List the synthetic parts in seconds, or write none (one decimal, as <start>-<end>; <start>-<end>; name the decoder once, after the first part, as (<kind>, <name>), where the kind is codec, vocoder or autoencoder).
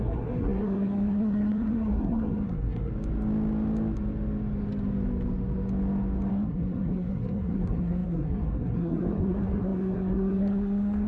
0.0-2.9 (codec, SNAC); 6.3-11.1